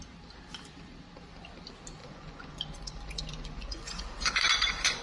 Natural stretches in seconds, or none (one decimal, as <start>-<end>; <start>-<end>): 0.0-2.0